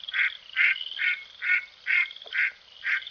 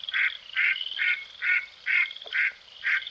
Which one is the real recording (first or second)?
first